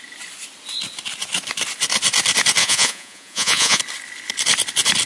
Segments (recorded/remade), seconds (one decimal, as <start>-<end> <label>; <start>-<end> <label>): 0.0-2.6 recorded; 2.6-3.8 remade; 3.8-5.1 recorded